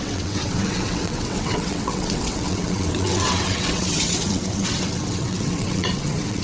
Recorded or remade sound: remade